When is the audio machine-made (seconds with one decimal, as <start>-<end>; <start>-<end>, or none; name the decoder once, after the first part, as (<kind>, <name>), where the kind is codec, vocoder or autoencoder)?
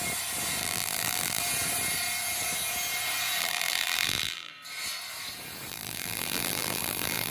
0.6-1.4 (vocoder, BigVGAN v2); 3.4-4.5; 5.7-7.3